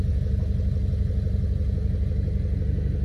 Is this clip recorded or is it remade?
recorded